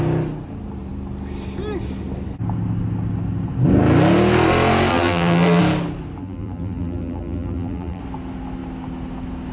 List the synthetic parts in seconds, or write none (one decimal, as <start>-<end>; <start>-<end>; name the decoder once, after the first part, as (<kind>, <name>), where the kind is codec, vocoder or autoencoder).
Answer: 4.9-5.6 (vocoder, BigVGAN v2); 6.2-8.0